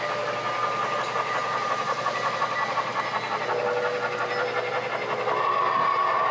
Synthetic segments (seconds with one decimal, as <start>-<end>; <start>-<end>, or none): 2.9-3.5